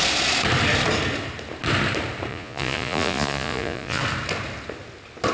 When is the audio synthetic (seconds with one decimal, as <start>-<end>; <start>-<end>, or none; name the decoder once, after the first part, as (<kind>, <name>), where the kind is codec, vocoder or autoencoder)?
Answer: 2.3-4.0 (vocoder, Vocos)